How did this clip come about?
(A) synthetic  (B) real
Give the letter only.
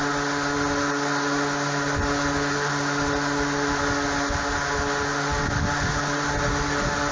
B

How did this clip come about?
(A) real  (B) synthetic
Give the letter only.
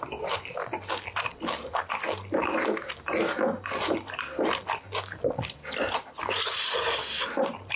A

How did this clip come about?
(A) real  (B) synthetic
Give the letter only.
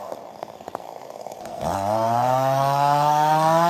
B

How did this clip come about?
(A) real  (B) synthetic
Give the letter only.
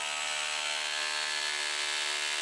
A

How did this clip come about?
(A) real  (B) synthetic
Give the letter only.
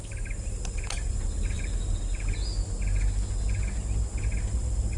A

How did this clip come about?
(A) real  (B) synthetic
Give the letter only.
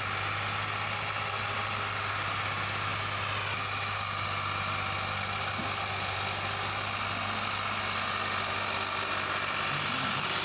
A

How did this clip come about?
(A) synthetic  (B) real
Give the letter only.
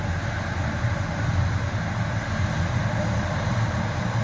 B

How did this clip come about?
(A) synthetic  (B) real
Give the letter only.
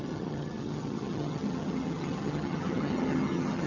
A